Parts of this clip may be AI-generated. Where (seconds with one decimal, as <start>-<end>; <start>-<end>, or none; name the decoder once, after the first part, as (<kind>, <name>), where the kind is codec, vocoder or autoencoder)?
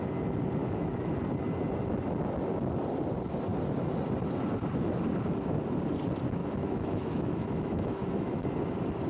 0.6-1.1 (autoencoder, DAC-VAE); 6.4-8.4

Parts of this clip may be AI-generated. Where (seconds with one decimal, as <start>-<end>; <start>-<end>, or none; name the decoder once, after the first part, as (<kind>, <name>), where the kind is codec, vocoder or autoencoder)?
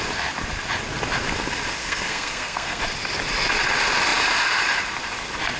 1.8-2.8 (codec, SNAC)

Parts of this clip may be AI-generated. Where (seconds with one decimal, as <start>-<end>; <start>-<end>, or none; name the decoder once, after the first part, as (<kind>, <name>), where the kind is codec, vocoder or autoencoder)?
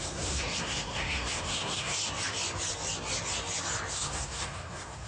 0.0-2.0 (codec, SNAC); 3.9-5.1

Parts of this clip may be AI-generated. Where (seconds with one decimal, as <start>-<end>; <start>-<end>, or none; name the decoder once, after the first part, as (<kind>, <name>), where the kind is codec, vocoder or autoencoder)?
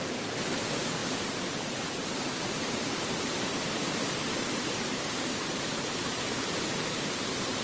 0.0-7.6 (vocoder, BigVGAN v2)